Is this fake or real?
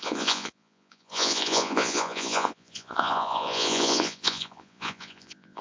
fake